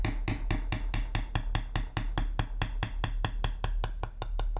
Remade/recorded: recorded